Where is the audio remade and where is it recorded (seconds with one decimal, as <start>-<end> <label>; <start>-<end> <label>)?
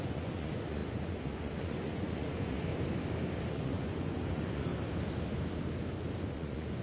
0.0-2.7 remade; 2.7-3.5 recorded; 3.5-4.7 remade; 4.7-6.2 recorded; 6.2-6.8 remade